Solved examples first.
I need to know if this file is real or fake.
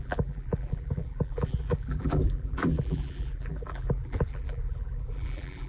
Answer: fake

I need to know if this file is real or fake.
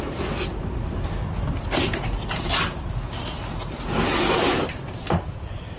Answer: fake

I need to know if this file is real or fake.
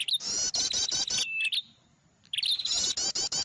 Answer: fake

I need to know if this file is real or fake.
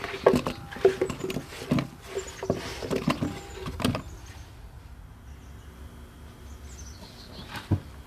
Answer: real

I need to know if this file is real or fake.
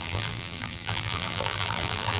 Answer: fake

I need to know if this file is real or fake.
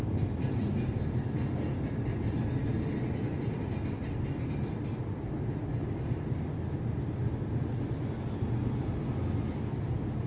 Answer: real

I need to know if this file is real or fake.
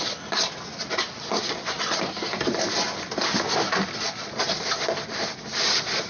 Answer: fake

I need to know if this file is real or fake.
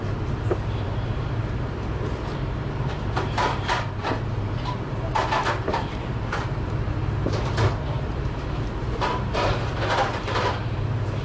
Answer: fake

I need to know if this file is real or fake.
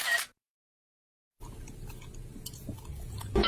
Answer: real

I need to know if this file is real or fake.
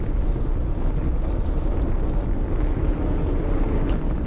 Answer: real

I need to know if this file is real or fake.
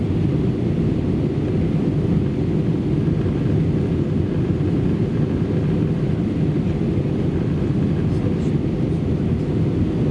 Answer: real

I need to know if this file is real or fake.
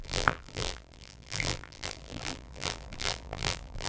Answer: fake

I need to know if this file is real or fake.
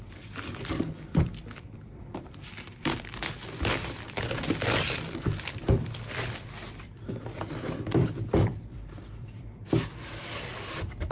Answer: fake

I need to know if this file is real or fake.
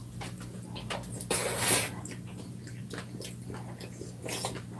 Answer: real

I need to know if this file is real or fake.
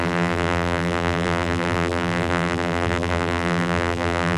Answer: fake